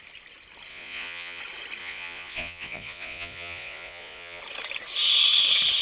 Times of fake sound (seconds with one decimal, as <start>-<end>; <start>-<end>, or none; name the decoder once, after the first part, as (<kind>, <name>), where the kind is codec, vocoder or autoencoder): 0.7-1.4 (vocoder, Vocos); 1.8-4.4